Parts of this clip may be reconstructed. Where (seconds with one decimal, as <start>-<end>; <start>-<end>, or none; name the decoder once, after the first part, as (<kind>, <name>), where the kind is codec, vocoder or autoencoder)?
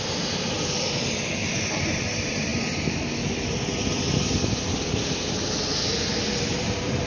0.0-1.4 (vocoder, BigVGAN v2); 1.9-2.5